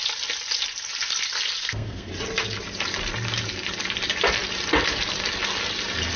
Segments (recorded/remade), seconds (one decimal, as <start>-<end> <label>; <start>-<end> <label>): 0.0-1.6 recorded; 1.6-2.1 remade; 2.1-6.2 recorded